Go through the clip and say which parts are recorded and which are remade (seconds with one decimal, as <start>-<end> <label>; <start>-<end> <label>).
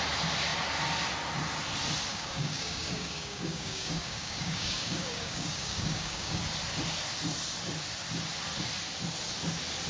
0.0-2.1 recorded; 2.1-6.4 remade; 6.4-9.9 recorded